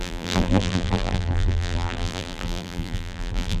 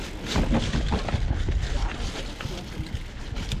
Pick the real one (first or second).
second